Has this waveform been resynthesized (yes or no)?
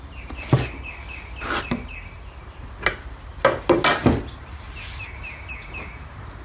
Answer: no